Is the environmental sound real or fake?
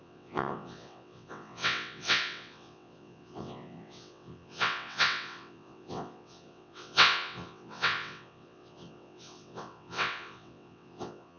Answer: fake